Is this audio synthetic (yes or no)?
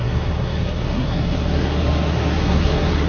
yes